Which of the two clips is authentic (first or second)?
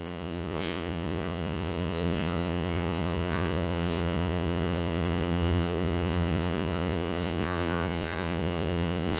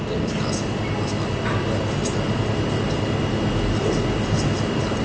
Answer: second